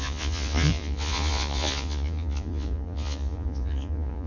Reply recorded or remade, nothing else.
remade